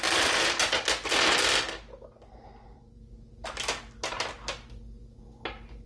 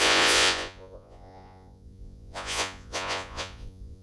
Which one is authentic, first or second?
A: first